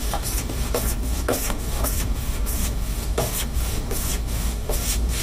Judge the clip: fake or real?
fake